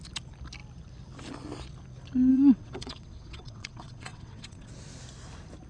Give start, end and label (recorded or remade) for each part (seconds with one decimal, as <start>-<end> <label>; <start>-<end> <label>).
0.0-2.3 recorded; 2.3-4.7 remade; 4.7-5.7 recorded